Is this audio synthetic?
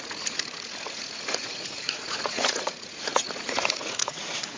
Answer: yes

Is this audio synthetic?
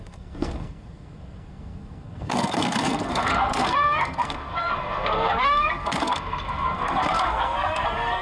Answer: yes